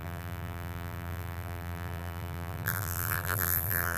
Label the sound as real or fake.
fake